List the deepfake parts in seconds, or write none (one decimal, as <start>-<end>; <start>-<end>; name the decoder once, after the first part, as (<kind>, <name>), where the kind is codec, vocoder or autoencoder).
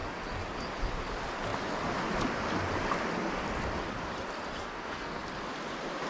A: 4.6-5.2 (codec, SNAC)